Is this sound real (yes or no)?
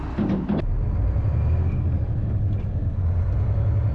yes